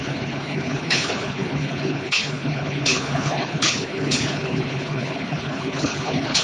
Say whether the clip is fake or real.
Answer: fake